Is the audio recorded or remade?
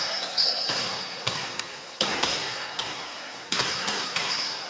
remade